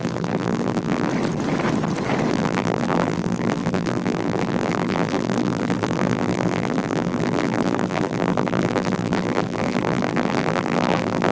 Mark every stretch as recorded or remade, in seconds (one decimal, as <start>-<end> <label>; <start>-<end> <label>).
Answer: 0.0-1.1 remade; 1.1-2.3 recorded; 2.3-11.3 remade